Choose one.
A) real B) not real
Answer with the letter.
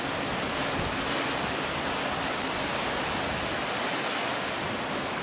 A